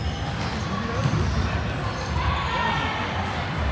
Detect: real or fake fake